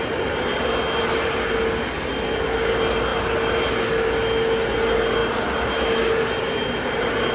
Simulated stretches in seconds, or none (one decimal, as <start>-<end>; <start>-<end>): none